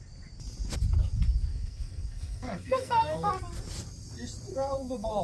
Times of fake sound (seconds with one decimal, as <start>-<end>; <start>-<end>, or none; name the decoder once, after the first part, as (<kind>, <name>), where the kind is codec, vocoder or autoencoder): 1.5-3.3 (codec, SNAC); 4.5-5.2